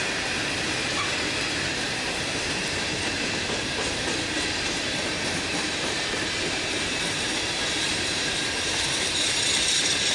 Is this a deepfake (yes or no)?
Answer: yes